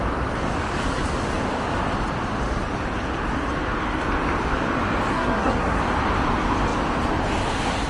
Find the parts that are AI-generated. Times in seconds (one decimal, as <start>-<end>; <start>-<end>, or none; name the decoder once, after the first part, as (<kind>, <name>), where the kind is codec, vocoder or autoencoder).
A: 5.1-5.8 (codec, SNAC)